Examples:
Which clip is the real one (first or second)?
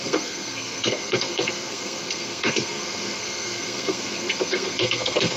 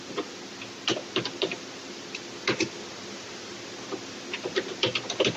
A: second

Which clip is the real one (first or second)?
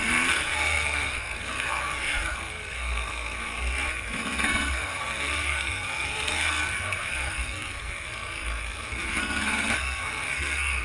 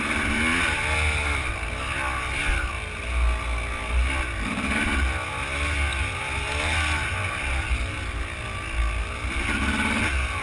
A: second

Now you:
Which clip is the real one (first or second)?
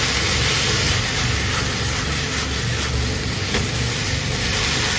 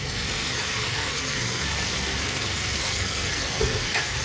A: first